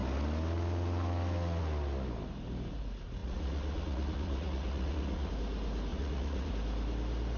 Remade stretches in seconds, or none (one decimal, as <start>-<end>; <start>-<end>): 3.2-5.3; 5.9-6.5